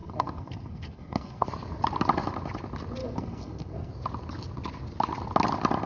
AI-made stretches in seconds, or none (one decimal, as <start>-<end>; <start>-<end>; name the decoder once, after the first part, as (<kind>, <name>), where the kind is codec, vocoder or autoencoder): 0.0-1.5 (codec, SNAC); 3.0-3.9